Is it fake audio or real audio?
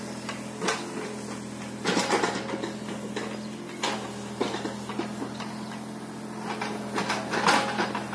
real